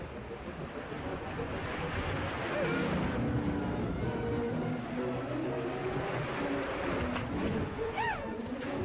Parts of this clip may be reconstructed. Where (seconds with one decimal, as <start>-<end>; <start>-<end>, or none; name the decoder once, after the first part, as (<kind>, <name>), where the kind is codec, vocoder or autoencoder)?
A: 1.1-2.2 (vocoder, Vocos); 5.8-6.4; 7.4-8.8

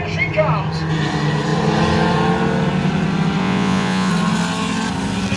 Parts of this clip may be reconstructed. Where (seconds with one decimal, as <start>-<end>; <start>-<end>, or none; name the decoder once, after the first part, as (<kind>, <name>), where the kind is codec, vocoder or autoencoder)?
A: 3.4-4.1 (vocoder, Vocos)

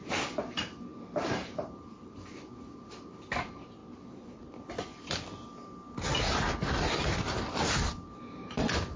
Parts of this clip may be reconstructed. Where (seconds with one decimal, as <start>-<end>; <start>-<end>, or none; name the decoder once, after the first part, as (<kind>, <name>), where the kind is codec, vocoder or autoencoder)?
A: 0.0-3.8 (vocoder, BigVGAN v2); 6.8-9.0

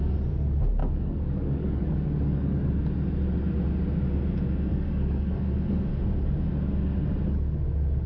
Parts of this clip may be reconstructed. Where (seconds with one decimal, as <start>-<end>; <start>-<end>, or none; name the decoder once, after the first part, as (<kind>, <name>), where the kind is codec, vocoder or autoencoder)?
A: 0.8-2.8 (codec, DAC); 4.7-5.9

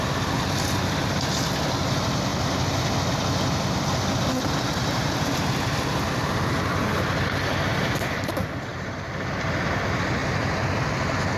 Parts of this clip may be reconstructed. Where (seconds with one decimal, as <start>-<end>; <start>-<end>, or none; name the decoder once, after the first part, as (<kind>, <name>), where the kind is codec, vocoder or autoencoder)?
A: 8.7-9.6 (vocoder, BigVGAN v2)

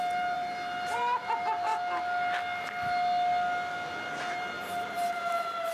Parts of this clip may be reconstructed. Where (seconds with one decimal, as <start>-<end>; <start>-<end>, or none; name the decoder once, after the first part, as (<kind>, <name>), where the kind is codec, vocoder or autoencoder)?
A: 0.0-1.7 (vocoder, BigVGAN v2); 4.3-5.7

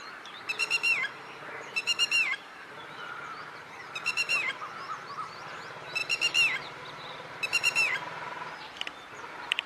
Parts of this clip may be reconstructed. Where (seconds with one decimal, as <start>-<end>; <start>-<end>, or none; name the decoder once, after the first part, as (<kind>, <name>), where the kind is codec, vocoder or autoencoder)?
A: 0.0-6.0 (vocoder, BigVGAN v2); 6.6-9.7

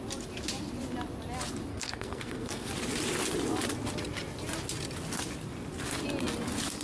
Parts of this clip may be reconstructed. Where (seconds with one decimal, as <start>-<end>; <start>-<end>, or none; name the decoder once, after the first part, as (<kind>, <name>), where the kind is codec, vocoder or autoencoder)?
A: 1.7-2.7 (codec, SNAC)